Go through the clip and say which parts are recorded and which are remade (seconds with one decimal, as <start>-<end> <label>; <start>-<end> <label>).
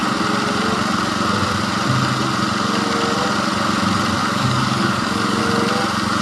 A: 0.0-4.2 recorded; 4.2-5.4 remade; 5.4-6.2 recorded